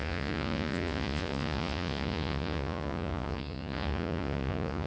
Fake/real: fake